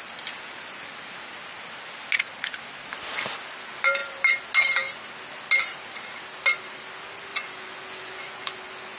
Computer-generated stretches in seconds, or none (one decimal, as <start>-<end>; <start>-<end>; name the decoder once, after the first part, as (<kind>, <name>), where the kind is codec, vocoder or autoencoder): 7.3-9.0 (vocoder, Vocos)